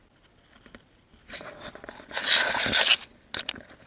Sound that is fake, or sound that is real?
real